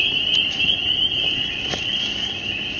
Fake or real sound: real